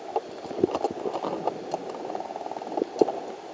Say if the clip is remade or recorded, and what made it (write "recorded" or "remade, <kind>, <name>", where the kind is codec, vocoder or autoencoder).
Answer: recorded